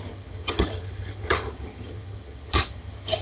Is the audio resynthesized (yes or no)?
yes